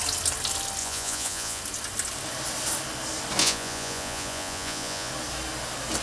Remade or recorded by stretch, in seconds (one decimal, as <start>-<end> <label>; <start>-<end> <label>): 0.0-0.8 recorded; 0.8-1.6 remade; 1.6-3.4 recorded; 3.4-5.1 remade; 5.1-6.0 recorded